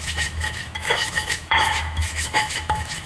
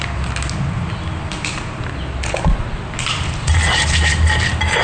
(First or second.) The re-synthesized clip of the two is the first